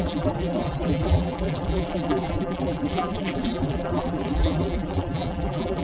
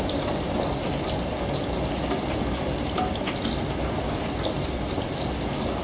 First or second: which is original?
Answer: second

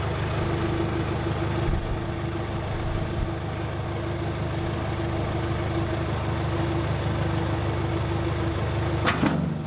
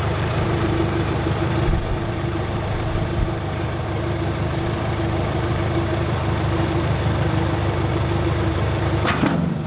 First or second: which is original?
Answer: first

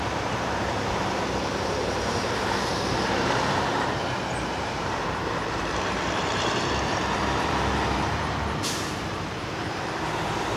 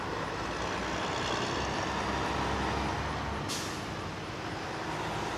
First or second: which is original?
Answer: second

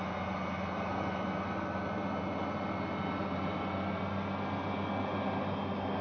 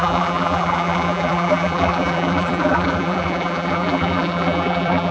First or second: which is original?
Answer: first